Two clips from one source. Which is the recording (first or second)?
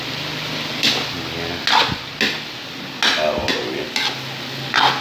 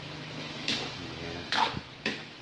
first